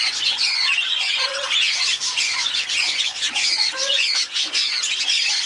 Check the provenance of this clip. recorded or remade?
remade